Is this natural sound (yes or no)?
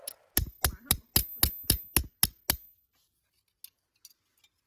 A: yes